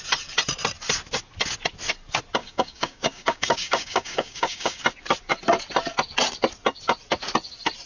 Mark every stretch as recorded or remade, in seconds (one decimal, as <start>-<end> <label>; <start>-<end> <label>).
0.0-2.4 recorded; 2.4-4.8 remade; 4.8-7.9 recorded